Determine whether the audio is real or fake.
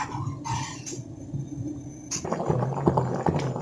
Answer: real